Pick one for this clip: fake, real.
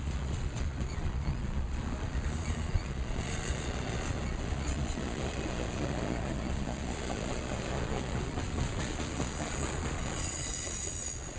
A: fake